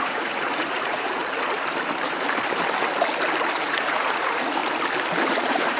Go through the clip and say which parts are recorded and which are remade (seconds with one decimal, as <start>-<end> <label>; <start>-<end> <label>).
0.0-1.2 remade; 1.2-3.6 recorded; 3.6-4.6 remade; 4.6-5.3 recorded; 5.3-5.8 remade